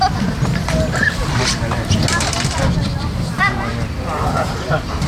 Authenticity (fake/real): real